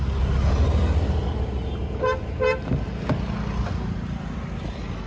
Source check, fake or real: real